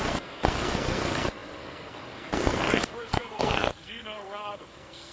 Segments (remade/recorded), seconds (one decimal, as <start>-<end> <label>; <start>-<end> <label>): 0.0-5.1 remade